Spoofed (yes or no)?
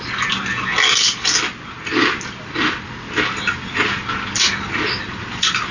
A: no